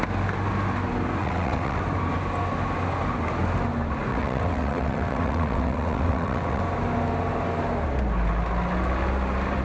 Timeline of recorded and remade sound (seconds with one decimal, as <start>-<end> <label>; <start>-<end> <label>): 0.0-1.2 recorded; 1.2-1.8 remade; 1.8-4.1 recorded; 4.1-6.6 remade; 6.6-9.6 recorded